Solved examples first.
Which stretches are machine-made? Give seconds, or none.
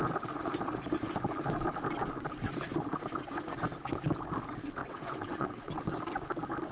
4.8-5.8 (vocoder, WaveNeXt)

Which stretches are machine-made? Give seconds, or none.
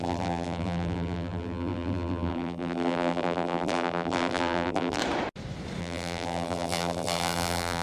0.0-5.0 (vocoder, BigVGAN v2); 5.8-7.8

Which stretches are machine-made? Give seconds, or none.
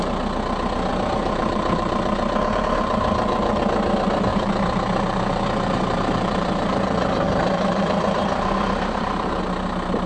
0.9-3.6 (vocoder, BigVGAN v2); 4.3-9.4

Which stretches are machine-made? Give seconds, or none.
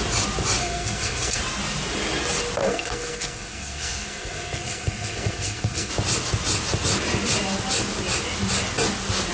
0.6-1.4 (codec, SNAC); 2.6-5.9